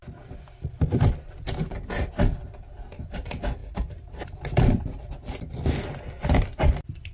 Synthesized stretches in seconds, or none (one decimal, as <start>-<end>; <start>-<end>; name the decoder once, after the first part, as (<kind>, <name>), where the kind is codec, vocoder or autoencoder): 1.6-2.1 (vocoder, BigVGAN v2); 3.6-4.2